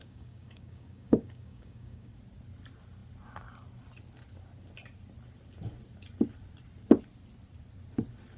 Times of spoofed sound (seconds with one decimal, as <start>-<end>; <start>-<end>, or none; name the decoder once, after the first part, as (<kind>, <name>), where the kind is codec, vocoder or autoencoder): 0.0-2.1 (codec, DAC)